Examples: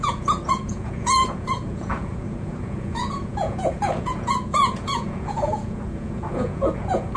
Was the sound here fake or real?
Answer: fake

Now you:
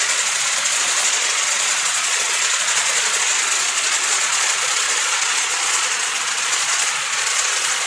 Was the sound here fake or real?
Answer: fake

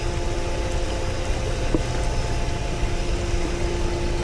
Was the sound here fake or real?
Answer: real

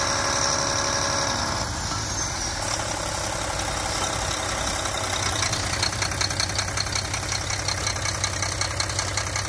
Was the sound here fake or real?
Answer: real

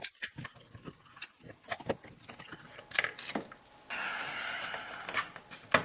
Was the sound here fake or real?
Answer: real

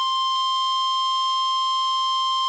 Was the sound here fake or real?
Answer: real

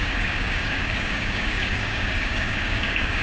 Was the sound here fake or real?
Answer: fake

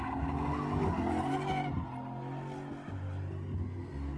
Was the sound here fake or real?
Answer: real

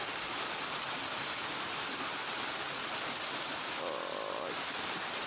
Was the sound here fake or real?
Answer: real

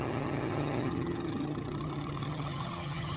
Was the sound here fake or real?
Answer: fake